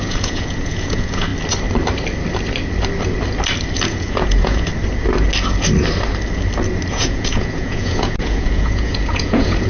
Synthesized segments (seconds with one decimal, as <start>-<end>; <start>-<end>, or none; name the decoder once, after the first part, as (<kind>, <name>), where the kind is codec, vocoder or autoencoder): 0.0-1.3 (vocoder, Vocos); 3.8-4.7; 6.9-9.7